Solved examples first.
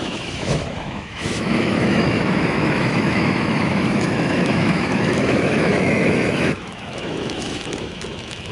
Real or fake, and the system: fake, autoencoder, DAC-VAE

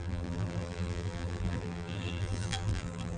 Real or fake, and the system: fake, vocoder, BigVGAN v2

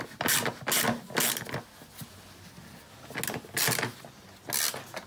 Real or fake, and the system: real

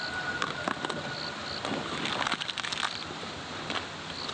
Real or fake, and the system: real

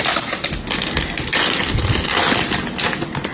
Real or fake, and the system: real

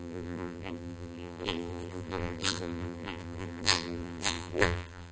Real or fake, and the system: fake, vocoder, BigVGAN v2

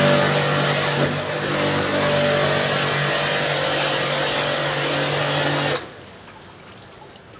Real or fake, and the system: real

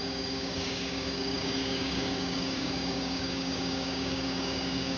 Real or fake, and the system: fake, codec, DAC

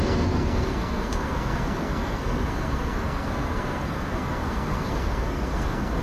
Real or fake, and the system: fake, codec, SNAC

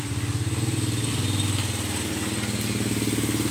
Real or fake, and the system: real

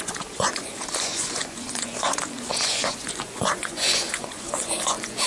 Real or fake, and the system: fake, vocoder, Vocos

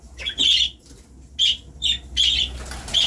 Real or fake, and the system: real